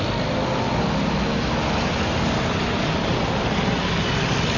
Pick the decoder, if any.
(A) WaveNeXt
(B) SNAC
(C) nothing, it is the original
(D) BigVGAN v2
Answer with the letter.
C